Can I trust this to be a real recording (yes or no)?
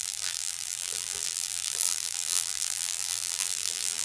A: no